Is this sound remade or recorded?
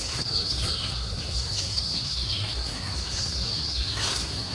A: remade